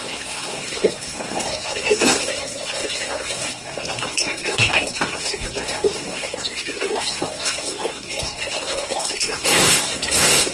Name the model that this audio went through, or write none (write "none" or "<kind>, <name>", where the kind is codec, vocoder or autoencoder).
codec, SNAC